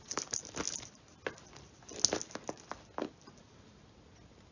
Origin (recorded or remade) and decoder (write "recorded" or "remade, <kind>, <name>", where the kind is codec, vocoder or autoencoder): recorded